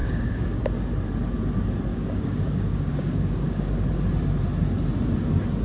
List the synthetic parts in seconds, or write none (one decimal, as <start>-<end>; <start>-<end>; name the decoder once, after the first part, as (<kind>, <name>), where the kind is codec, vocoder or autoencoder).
0.0-0.6 (codec, DAC); 1.9-3.7